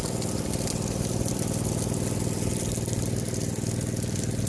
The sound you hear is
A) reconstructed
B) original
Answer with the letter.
B